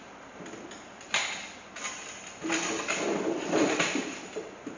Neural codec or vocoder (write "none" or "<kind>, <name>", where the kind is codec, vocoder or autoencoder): none